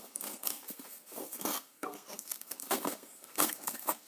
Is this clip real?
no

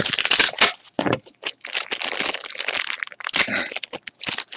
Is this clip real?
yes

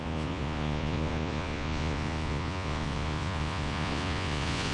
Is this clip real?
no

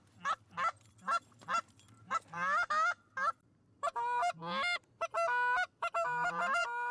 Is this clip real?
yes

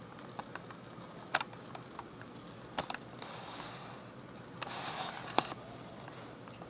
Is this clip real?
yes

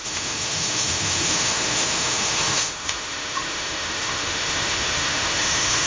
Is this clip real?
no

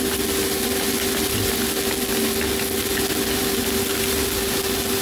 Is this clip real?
yes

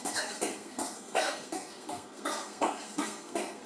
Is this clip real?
no